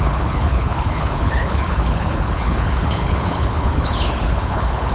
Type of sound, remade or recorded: remade